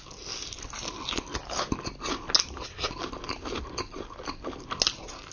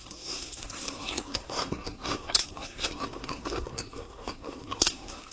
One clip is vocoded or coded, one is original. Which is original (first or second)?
first